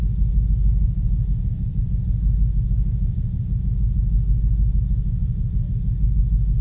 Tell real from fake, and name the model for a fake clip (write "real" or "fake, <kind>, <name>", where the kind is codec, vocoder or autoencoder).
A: real